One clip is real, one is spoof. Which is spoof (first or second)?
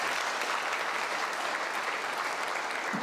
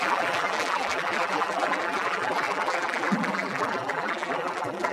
second